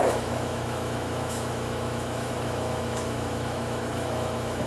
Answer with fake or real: fake